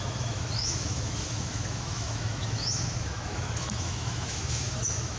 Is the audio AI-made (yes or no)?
yes